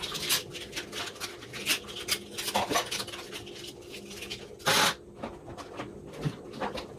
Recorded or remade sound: recorded